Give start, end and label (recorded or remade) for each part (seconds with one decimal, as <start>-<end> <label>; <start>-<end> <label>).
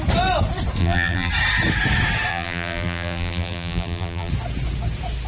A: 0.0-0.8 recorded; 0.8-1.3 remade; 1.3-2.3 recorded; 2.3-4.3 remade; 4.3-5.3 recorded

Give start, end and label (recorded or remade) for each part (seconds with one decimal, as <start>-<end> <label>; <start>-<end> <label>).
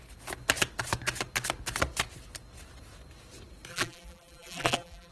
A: 0.0-3.7 recorded; 3.7-5.1 remade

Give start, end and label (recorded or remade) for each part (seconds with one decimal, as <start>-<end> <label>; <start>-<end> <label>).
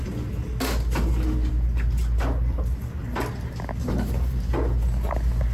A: 0.0-3.8 recorded; 3.8-4.4 remade; 4.4-5.5 recorded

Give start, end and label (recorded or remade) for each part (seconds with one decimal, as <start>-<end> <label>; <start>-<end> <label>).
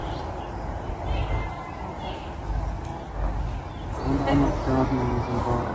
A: 0.0-5.7 recorded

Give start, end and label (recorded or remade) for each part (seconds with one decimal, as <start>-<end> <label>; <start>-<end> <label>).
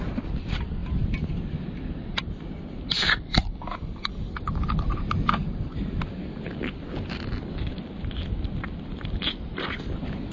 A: 0.0-10.3 recorded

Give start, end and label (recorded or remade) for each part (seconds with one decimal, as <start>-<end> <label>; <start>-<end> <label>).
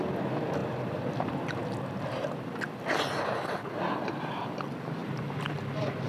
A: 0.0-5.0 recorded; 5.0-5.6 remade; 5.6-6.1 recorded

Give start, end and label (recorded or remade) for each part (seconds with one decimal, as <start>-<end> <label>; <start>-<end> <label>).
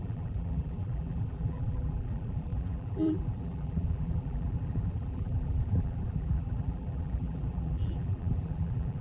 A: 0.0-9.0 remade